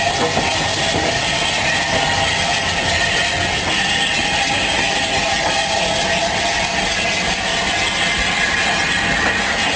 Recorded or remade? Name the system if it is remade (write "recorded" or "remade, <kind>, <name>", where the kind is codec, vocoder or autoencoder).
recorded